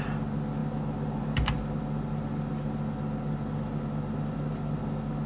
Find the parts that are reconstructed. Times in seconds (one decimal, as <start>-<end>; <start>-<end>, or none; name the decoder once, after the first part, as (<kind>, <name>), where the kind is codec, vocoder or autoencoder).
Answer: none